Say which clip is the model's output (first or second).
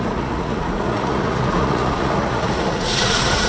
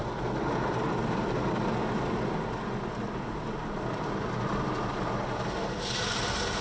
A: first